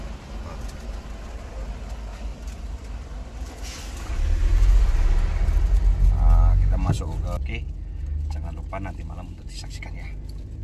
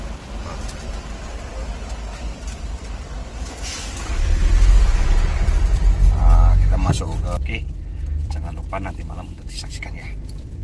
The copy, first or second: second